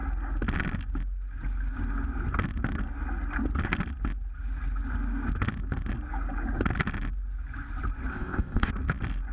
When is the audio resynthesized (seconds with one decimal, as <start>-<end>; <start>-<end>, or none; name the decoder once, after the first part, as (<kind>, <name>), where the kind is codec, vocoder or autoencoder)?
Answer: 8.1-8.7 (codec, ZipCodec)